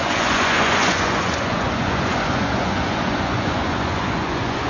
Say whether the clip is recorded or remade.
remade